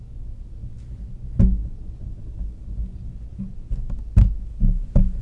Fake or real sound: real